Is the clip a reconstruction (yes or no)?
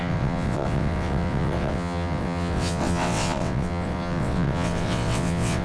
yes